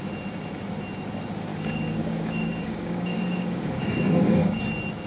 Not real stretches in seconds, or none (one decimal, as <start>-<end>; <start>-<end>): 1.5-4.6